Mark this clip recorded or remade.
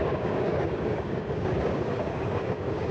remade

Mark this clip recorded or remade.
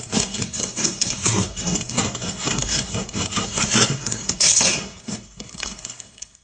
remade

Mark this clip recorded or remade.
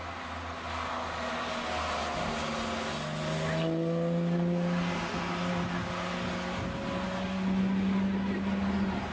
recorded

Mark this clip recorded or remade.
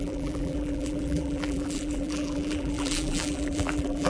remade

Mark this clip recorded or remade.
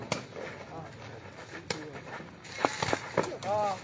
recorded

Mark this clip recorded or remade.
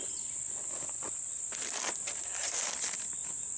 recorded